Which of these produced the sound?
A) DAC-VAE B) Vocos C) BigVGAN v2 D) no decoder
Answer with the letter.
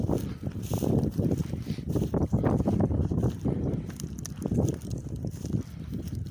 C